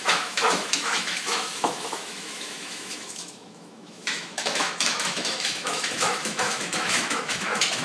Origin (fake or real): fake